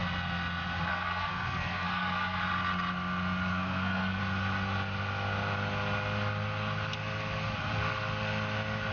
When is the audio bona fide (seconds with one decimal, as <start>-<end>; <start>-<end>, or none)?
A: 0.0-0.9; 2.4-3.5; 4.2-8.9